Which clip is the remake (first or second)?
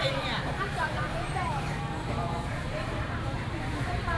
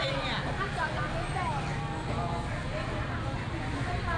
first